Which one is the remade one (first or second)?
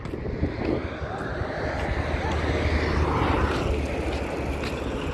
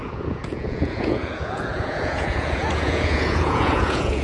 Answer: second